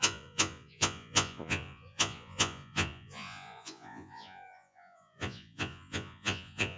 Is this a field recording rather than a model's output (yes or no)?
no